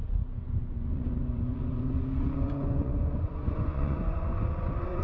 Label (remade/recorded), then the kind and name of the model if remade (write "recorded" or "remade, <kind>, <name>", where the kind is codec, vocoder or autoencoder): remade, vocoder, Vocos